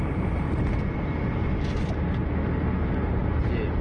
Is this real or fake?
real